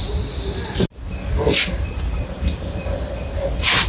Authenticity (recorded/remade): recorded